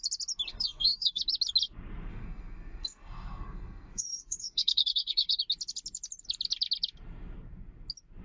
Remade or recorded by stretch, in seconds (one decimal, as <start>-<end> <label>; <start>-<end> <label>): 0.0-0.5 recorded; 0.5-1.2 remade; 1.2-2.1 recorded; 2.1-5.4 remade; 5.4-8.2 recorded